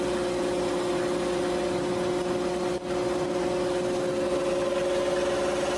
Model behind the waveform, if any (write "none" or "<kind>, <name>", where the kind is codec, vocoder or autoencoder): none